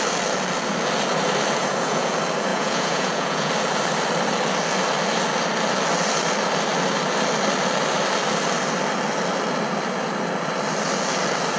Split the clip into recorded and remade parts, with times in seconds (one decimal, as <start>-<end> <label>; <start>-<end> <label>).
0.0-1.6 recorded; 1.6-2.1 remade; 2.1-2.5 recorded; 2.5-3.5 remade; 3.5-11.6 recorded